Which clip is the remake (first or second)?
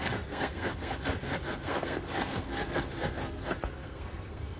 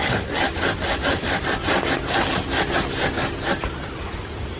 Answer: first